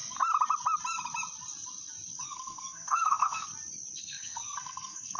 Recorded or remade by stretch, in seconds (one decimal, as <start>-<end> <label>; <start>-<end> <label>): 0.0-2.2 recorded; 2.2-3.5 remade; 3.5-4.0 recorded; 4.0-5.2 remade